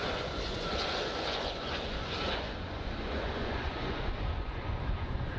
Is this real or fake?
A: fake